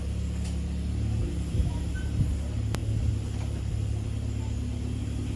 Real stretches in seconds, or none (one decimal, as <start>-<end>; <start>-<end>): 0.0-5.4